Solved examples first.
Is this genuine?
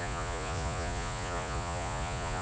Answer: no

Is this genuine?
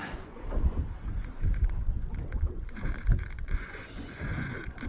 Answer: no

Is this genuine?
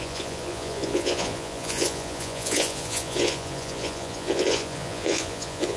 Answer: no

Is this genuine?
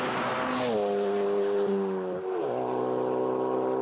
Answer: yes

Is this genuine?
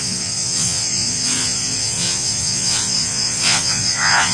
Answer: no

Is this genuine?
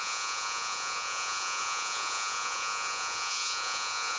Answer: no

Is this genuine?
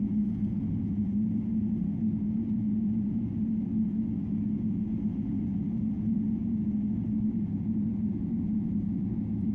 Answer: no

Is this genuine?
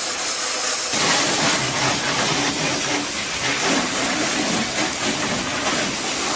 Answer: yes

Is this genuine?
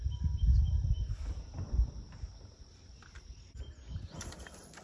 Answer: yes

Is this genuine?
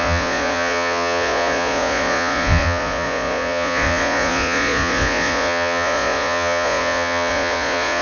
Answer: no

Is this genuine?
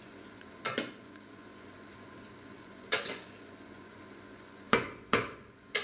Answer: no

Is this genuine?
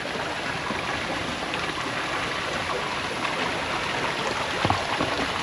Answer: yes